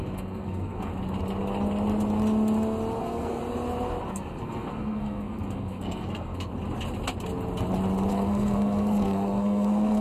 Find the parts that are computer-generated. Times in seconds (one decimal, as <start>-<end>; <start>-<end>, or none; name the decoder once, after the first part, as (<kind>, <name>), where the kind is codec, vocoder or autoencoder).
0.0-0.9 (codec, SNAC); 3.0-3.4; 4.1-6.5; 8.1-10.0